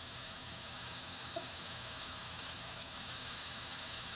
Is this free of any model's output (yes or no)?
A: no